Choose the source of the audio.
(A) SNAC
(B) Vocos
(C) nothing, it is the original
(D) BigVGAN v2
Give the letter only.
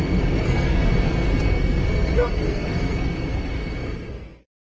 A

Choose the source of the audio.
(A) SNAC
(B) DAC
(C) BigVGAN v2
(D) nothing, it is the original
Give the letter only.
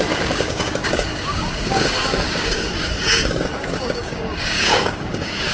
B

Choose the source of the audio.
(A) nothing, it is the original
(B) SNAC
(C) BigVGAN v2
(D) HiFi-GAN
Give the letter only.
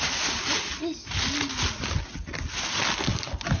A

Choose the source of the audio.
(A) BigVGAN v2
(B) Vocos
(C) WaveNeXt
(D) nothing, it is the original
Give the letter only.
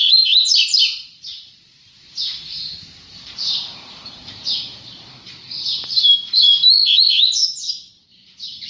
A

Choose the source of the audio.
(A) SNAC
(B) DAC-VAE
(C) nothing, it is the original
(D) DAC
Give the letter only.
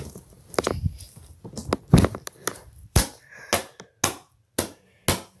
C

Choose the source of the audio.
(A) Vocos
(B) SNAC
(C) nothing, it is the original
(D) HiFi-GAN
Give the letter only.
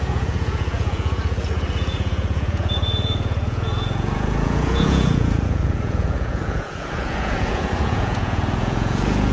A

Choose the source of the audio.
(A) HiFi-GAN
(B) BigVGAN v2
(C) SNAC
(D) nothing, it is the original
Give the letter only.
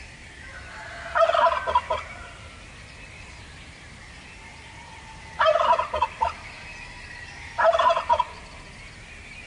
D